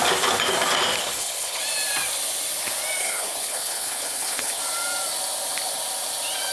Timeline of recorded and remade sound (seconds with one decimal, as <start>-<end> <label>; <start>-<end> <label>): 0.0-1.0 recorded; 1.0-1.6 remade; 1.6-3.0 recorded; 3.0-4.6 remade; 4.6-6.5 recorded